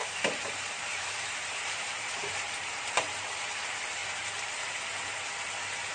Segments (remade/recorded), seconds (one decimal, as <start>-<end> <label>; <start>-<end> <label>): 0.0-3.1 remade; 3.1-5.9 recorded